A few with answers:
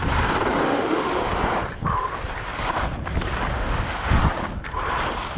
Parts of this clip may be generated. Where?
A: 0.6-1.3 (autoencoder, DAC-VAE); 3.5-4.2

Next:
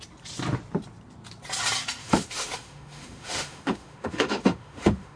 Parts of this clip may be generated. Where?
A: 2.0-5.2 (autoencoder, DAC-VAE)